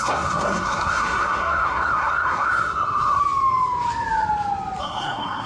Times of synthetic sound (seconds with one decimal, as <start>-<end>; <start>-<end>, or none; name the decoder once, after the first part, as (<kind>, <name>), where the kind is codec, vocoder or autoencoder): 0.0-3.2 (codec, SNAC); 4.8-5.5